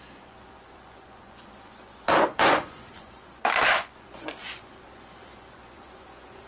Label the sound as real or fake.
fake